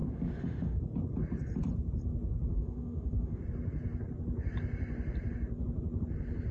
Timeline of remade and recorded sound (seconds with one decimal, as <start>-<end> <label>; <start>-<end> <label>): 0.0-0.8 remade; 0.8-2.5 recorded; 2.5-3.4 remade; 3.4-6.5 recorded